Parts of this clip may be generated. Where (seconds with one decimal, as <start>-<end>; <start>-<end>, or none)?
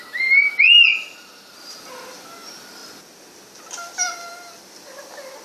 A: none